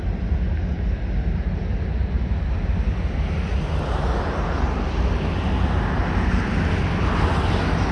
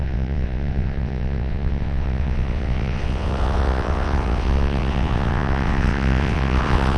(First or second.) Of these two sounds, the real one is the first